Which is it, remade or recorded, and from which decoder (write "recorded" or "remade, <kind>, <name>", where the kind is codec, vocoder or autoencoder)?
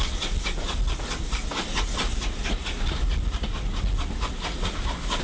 recorded